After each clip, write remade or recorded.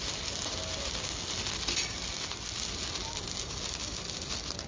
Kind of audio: recorded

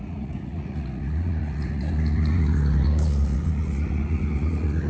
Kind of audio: remade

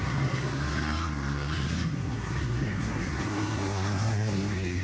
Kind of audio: remade